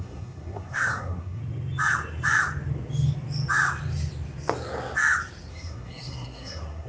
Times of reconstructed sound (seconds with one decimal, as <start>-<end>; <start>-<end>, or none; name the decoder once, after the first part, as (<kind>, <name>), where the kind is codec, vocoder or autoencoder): 0.0-1.4 (codec, SNAC); 5.5-6.9